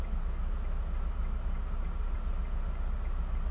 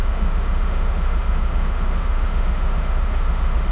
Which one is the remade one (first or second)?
second